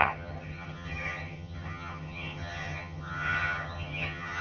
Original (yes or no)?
no